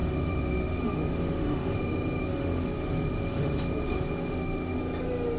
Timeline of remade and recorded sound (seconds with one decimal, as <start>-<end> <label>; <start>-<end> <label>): 0.0-1.8 remade; 1.8-2.2 recorded; 2.2-4.8 remade; 4.8-5.4 recorded